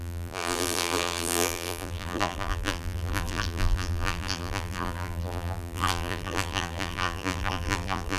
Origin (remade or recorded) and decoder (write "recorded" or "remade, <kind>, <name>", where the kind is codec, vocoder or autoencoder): remade, vocoder, BigVGAN v2